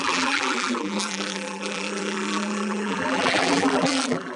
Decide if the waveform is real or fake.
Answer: fake